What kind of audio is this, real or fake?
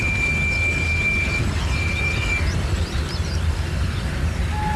real